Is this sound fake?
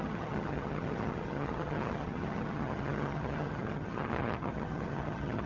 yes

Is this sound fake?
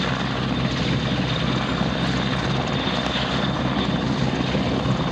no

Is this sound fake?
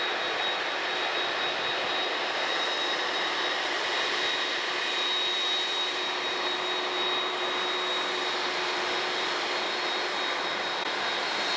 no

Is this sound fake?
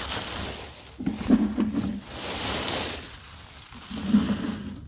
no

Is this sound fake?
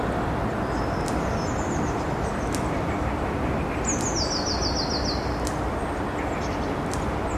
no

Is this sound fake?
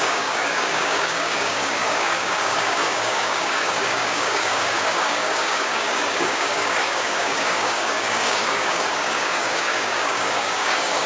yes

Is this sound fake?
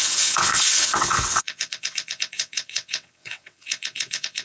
yes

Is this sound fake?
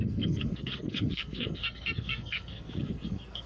yes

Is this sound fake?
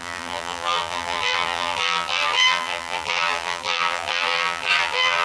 yes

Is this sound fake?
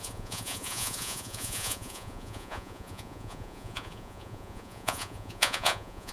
yes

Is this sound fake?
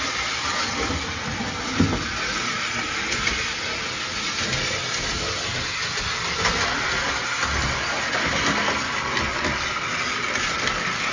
no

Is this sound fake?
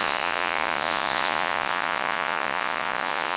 yes